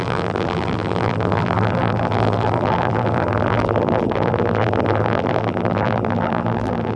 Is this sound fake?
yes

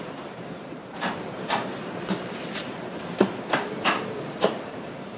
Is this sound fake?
yes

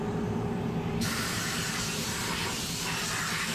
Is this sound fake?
yes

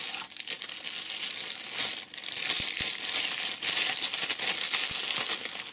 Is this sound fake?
no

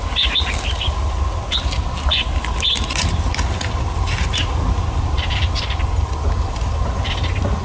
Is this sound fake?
yes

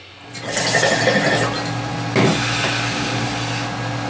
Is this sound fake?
no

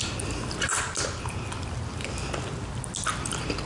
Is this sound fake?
no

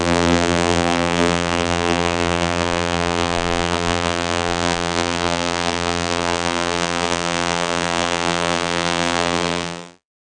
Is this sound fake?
yes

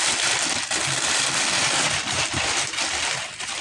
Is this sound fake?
yes